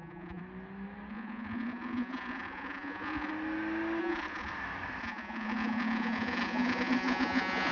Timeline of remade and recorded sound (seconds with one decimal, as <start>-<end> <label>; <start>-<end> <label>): 0.0-0.4 remade; 0.4-1.1 recorded; 1.1-3.3 remade; 3.3-4.0 recorded; 4.0-4.5 remade; 4.5-5.0 recorded; 5.0-7.7 remade